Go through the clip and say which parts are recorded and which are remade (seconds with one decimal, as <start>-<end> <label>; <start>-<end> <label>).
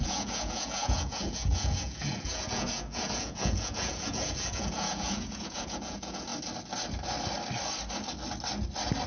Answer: 0.0-6.3 remade; 6.3-9.1 recorded